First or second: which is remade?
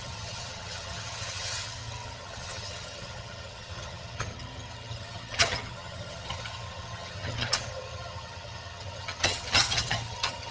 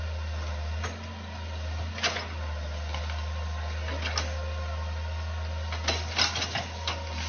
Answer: first